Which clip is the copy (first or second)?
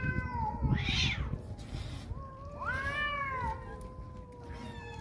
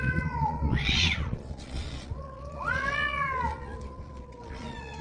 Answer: second